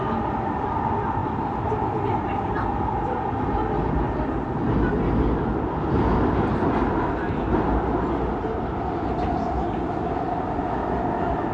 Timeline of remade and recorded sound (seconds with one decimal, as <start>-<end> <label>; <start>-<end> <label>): 0.0-11.5 recorded